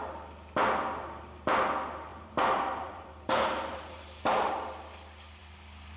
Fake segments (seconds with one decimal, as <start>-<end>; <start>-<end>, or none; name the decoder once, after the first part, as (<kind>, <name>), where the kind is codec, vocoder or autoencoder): 2.1-4.5 (vocoder, BigVGAN v2); 5.4-6.0